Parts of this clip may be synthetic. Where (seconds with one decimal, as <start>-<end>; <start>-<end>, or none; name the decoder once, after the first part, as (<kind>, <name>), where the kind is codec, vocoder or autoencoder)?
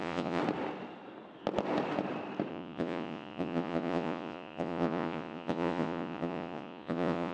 0.0-0.4 (vocoder, Vocos); 2.5-7.3